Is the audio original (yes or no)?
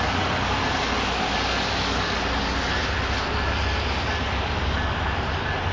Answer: yes